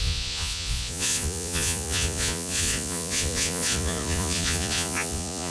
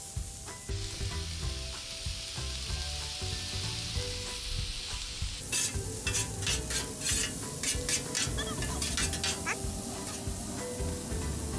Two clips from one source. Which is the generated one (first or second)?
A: first